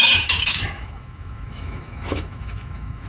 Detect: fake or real fake